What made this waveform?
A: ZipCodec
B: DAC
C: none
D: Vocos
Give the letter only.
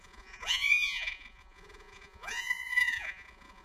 D